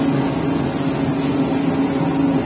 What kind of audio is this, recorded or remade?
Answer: recorded